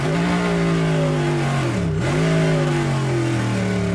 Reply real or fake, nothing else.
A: real